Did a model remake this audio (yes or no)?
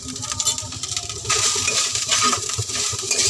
yes